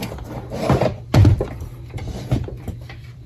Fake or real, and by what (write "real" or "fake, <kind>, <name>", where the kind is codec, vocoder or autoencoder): fake, vocoder, BigVGAN v2